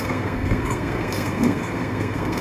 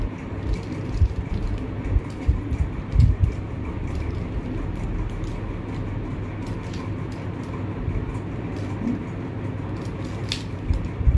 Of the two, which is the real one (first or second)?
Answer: second